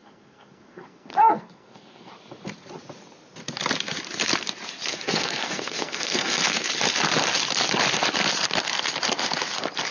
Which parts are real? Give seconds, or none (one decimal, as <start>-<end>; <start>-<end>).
2.1-4.9; 6.7-9.9